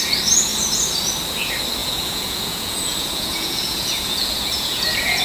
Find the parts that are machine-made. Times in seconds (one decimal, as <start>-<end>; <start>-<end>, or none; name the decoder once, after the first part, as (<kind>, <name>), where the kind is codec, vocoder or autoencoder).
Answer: 1.8-5.2 (vocoder, Vocos)